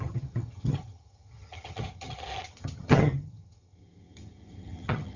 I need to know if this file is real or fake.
fake